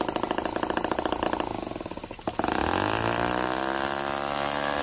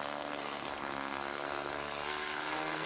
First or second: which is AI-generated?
second